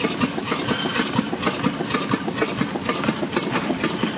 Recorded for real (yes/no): yes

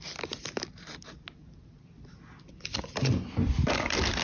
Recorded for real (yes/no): yes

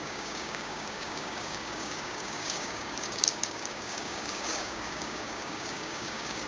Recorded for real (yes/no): no